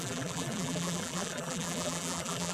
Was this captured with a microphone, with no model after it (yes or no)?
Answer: no